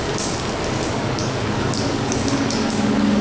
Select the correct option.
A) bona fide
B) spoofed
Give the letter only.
B